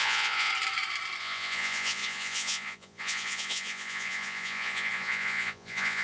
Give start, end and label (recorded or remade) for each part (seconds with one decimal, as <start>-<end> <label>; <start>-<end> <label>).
0.0-0.5 remade; 0.5-1.2 recorded; 1.2-6.0 remade